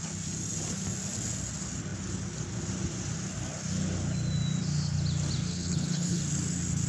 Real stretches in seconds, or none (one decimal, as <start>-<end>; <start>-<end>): 0.0-5.5; 6.2-6.9